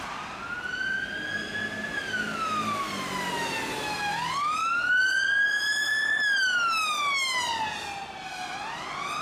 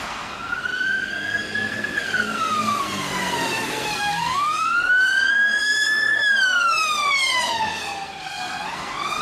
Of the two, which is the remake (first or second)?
second